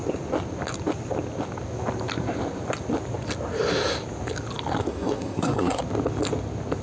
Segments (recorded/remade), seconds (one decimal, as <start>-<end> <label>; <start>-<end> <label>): 0.0-4.8 recorded; 4.8-5.8 remade; 5.8-6.8 recorded